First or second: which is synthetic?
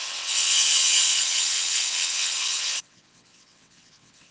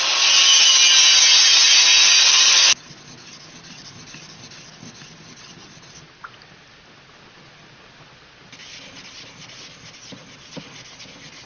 first